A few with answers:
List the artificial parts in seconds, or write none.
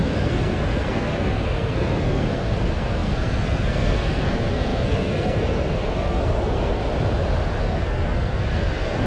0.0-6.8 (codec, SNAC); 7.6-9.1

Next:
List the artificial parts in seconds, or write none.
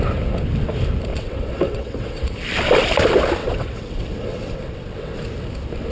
1.1-2.3 (vocoder, WaveNeXt); 3.4-5.2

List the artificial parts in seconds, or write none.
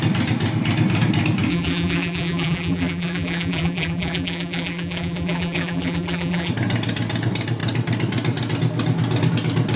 1.5-6.5 (vocoder, BigVGAN v2)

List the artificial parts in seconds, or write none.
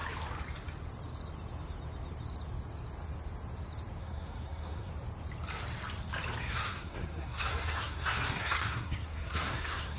4.0-4.9 (codec, SNAC); 6.4-10.0